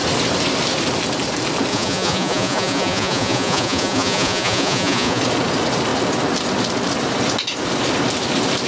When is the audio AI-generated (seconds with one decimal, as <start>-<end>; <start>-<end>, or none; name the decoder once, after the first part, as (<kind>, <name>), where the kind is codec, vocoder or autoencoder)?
1.7-5.2 (vocoder, Vocos)